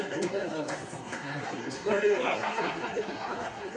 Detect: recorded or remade remade